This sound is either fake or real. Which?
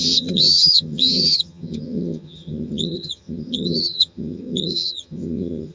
fake